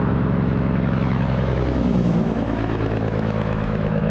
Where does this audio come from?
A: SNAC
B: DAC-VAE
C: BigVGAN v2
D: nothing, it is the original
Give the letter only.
B